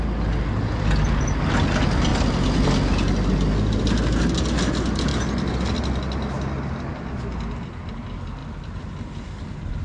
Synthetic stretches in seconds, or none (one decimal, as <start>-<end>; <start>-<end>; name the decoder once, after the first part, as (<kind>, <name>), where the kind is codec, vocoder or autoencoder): none